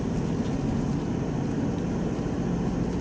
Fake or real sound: real